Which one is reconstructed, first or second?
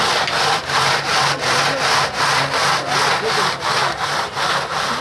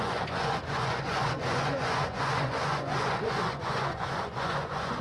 second